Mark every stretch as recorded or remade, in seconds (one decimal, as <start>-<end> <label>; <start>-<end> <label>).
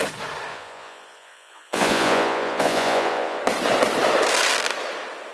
0.0-0.5 recorded; 0.5-3.4 remade; 3.4-5.3 recorded